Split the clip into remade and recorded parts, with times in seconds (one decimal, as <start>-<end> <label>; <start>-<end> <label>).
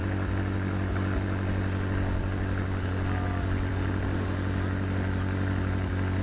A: 0.0-6.2 recorded